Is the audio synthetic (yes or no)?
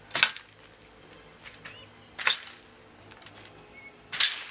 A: no